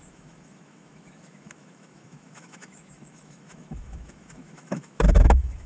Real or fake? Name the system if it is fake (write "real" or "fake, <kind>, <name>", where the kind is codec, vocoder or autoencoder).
fake, autoencoder, DAC-VAE